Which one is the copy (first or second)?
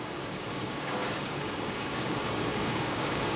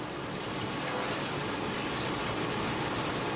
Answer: first